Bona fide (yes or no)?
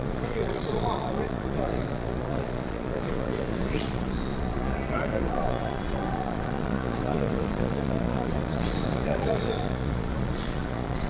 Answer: no